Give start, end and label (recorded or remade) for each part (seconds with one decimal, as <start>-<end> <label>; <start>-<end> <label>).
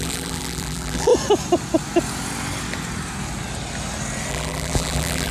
0.0-1.1 remade; 1.1-4.3 recorded; 4.3-5.3 remade